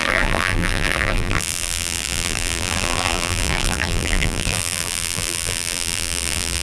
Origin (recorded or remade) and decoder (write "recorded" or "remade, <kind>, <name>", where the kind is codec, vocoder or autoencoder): remade, vocoder, BigVGAN v2